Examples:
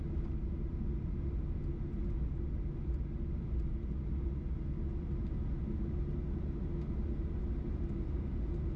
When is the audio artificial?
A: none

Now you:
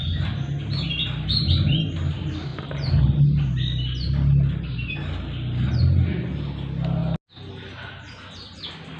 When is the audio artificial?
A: none

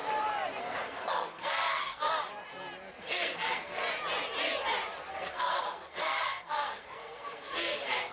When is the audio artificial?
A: 0.6-2.1 (codec, SNAC); 3.0-3.8; 5.1-8.1